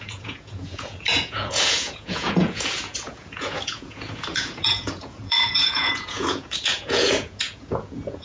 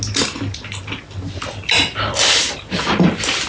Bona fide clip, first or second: second